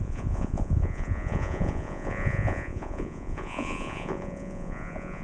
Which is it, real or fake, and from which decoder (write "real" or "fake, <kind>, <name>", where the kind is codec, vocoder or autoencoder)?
fake, vocoder, Vocos